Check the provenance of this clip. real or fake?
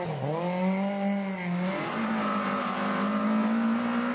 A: real